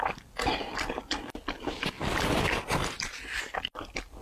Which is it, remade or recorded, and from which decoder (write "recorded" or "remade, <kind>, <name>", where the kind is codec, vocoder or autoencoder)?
recorded